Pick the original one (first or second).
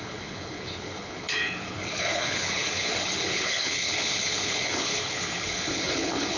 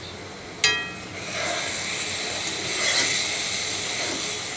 second